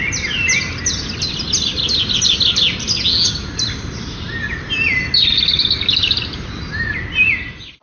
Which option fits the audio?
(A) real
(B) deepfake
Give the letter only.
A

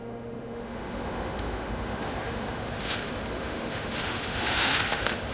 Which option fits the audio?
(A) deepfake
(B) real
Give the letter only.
A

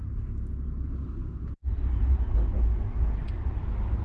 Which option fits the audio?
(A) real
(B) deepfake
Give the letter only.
A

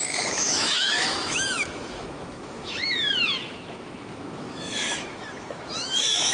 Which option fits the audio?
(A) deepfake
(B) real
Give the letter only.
A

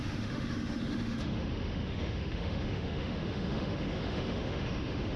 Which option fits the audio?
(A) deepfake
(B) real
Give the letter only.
A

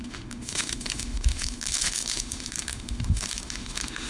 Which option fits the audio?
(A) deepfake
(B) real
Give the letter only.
A